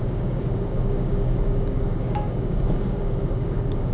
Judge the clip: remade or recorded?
remade